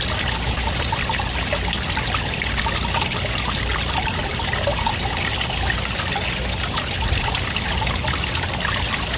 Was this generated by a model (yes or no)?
no